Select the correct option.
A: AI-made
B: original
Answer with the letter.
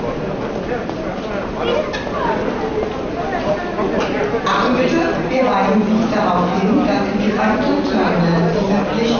B